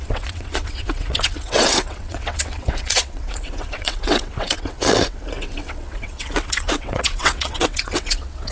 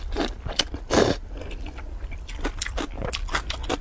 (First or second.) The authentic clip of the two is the second